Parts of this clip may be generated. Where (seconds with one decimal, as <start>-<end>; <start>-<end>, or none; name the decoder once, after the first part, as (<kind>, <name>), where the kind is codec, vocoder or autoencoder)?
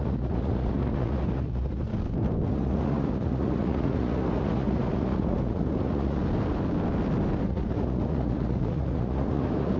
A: 0.0-1.9 (vocoder, Vocos); 2.5-6.2; 7.4-9.8